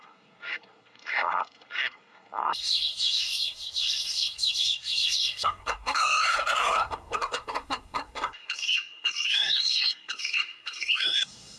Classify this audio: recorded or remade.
remade